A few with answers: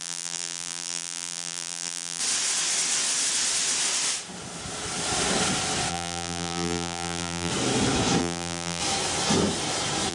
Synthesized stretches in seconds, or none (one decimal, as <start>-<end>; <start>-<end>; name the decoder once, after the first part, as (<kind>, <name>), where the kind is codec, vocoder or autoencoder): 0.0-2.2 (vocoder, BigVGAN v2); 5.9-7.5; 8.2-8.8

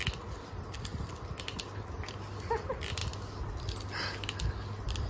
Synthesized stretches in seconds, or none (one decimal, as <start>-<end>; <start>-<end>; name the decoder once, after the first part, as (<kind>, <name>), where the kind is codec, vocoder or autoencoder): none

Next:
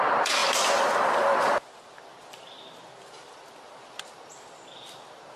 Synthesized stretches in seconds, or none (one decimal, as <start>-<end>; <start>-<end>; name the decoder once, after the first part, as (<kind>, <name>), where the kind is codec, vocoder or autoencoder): 0.0-5.4 (vocoder, BigVGAN v2)

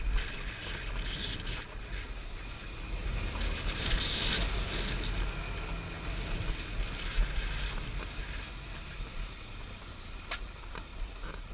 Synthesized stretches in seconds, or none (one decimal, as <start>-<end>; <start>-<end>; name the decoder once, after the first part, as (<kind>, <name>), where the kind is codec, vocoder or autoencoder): 3.0-4.0 (vocoder, BigVGAN v2); 10.9-11.5

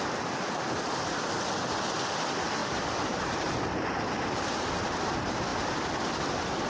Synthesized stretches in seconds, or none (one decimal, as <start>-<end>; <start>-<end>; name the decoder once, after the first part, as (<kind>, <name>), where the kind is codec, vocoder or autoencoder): 2.6-5.1 (vocoder, BigVGAN v2)

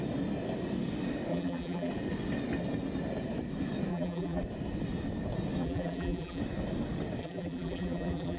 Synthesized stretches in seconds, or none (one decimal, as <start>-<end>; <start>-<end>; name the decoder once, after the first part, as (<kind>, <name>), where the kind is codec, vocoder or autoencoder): 1.3-1.9 (vocoder, BigVGAN v2); 3.9-4.4; 5.6-6.4; 7.2-8.4

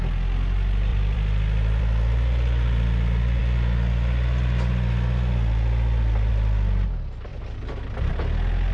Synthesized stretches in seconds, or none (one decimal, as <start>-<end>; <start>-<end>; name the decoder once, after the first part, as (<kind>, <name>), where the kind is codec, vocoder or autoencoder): 0.9-1.8 (vocoder, BigVGAN v2)

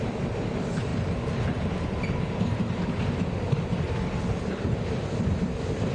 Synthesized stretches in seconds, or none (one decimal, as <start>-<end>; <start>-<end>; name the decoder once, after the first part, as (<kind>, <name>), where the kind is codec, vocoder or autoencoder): none